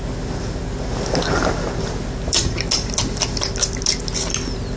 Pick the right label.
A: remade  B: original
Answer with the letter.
B